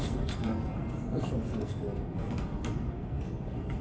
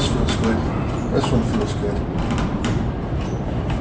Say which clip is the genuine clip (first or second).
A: second